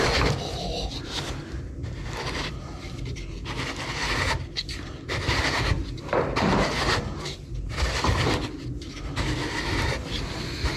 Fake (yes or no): no